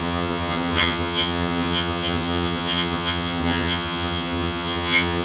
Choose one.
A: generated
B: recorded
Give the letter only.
A